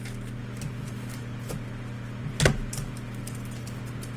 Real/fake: real